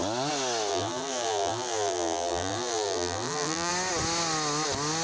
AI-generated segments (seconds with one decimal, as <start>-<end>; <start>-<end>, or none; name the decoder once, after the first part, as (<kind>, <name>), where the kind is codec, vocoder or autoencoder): 0.7-3.7 (vocoder, BigVGAN v2)